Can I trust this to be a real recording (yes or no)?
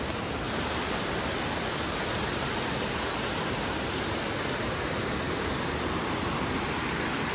yes